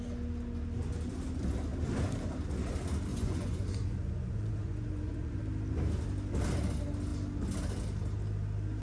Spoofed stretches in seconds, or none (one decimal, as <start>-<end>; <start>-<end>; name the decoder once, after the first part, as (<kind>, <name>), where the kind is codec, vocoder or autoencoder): 3.1-5.4 (vocoder, Vocos)